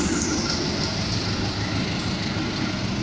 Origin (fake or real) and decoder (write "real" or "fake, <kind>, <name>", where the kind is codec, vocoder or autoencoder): real